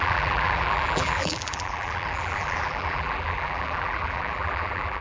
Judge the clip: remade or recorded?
remade